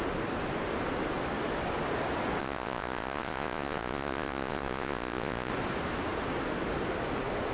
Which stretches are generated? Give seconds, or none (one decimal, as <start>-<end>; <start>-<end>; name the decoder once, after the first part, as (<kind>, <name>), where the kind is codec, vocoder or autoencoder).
2.4-5.5 (vocoder, Vocos)